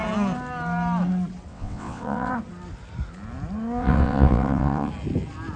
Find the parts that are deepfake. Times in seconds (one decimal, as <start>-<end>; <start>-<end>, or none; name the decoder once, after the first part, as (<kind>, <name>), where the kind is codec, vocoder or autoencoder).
1.5-2.3 (vocoder, WaveNeXt); 3.8-4.9